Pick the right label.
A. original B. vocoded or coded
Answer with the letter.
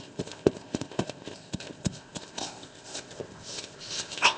B